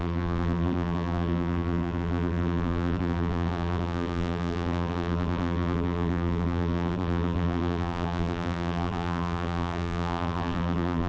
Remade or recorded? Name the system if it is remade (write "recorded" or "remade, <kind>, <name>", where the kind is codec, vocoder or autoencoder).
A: remade, vocoder, BigVGAN v2